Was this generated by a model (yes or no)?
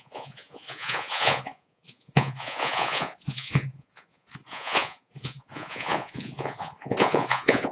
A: yes